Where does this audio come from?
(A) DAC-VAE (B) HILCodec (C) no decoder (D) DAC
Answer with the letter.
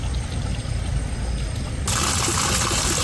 C